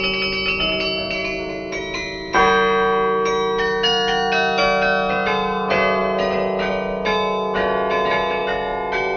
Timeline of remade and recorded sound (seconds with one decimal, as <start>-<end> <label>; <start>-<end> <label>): 0.0-9.2 recorded